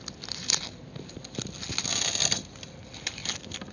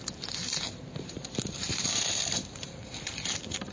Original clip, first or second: first